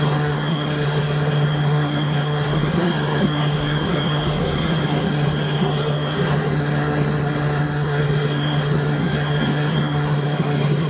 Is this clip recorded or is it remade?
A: remade